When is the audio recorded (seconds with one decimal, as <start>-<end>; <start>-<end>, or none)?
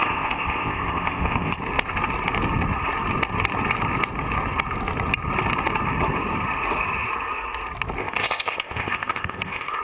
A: 1.6-8.0